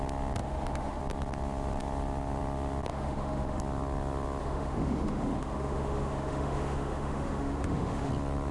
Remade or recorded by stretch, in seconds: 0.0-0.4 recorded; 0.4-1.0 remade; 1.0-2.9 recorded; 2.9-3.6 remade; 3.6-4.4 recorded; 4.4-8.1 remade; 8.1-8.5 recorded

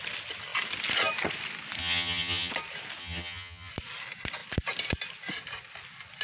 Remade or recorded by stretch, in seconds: 0.0-1.8 recorded; 1.8-2.5 remade; 2.5-3.0 recorded; 3.0-3.7 remade; 3.7-6.2 recorded